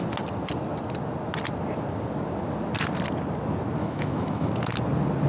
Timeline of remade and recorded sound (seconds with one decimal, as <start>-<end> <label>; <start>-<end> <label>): 0.0-3.8 recorded; 3.8-4.5 remade; 4.5-5.3 recorded